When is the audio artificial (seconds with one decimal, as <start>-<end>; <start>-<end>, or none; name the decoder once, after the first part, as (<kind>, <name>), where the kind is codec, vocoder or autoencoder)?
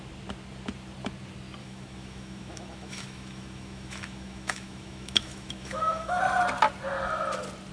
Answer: 1.6-6.2 (autoencoder, DAC-VAE)